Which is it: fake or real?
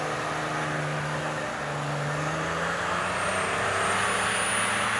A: real